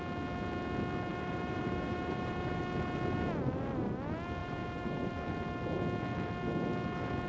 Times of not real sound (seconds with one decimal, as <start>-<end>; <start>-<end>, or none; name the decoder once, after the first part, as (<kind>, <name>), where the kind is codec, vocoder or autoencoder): 1.1-2.6 (vocoder, BigVGAN v2); 4.4-5.1